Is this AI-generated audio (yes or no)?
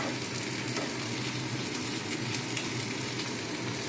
no